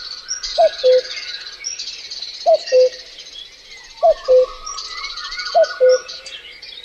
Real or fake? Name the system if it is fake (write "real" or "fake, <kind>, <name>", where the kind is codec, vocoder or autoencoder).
real